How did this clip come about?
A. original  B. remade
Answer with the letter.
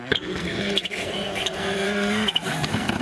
B